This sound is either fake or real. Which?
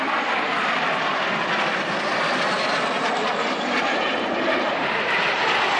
real